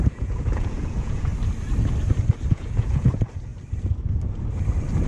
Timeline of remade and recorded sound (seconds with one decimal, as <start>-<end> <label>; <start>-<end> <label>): 0.0-1.3 remade; 1.3-2.5 recorded; 2.5-3.5 remade; 3.5-5.1 recorded